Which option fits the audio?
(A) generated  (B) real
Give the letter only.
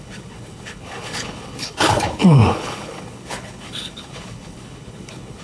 A